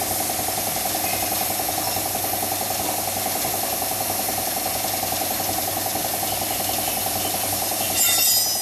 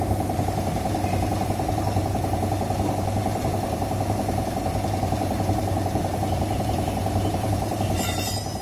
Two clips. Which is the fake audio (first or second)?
second